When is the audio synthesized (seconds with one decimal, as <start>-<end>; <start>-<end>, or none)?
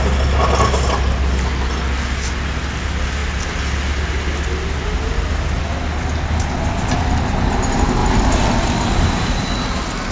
none